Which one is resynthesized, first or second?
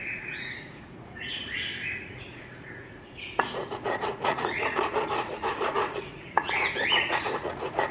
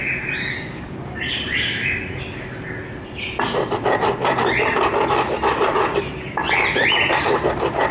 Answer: first